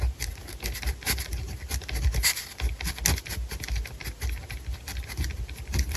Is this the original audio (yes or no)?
yes